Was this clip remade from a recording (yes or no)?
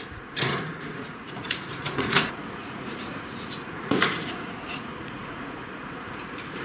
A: yes